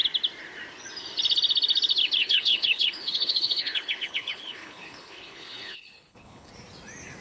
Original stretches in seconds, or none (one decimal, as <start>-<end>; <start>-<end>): 0.0-2.2; 6.5-7.2